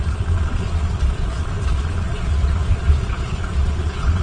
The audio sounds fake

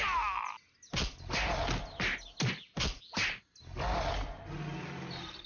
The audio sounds real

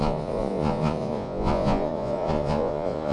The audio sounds fake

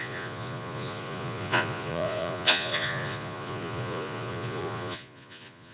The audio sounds fake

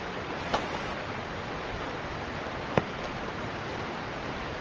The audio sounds real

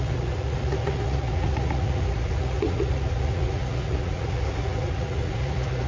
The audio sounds fake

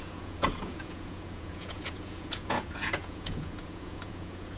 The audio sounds fake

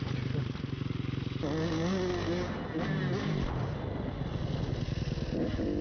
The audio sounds real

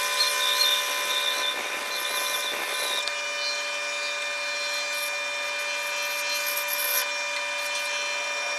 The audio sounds real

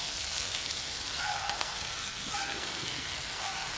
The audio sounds fake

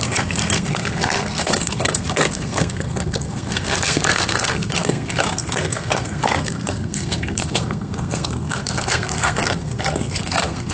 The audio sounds fake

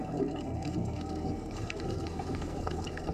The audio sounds fake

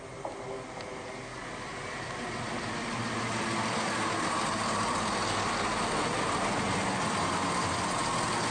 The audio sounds real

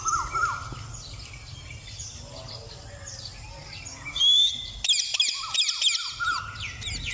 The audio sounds real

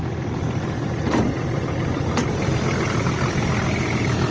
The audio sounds real